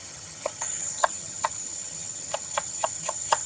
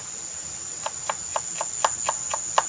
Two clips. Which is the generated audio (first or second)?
first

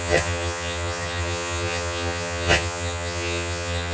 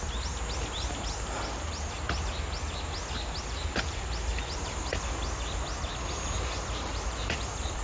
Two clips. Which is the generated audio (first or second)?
first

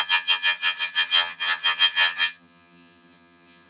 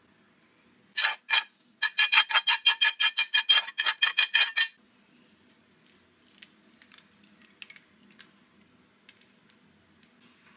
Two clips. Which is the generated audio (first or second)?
first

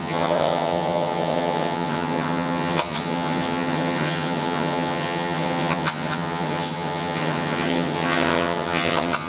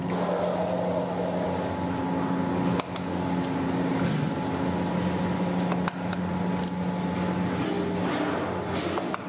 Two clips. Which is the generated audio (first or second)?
first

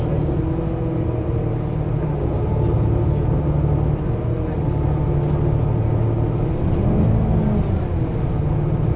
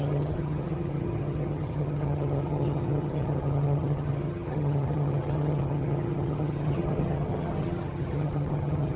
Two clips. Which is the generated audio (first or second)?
second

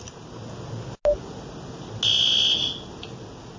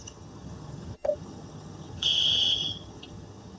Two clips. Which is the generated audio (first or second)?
second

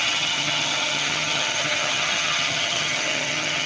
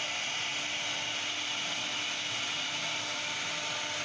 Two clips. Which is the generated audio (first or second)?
first